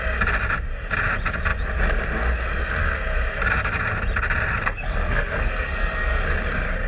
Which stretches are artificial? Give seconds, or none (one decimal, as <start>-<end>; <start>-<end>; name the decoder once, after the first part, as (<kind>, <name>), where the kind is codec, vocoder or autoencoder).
4.6-6.2 (codec, SNAC)